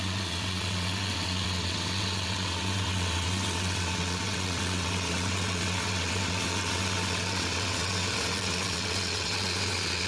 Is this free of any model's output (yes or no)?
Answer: no